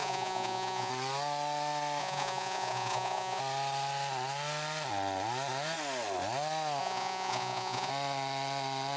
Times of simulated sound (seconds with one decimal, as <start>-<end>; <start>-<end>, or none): 0.0-0.9; 2.0-3.4; 6.8-7.9